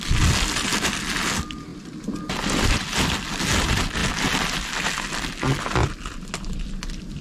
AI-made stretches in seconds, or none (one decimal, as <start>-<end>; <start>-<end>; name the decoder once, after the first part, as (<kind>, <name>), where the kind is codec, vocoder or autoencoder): none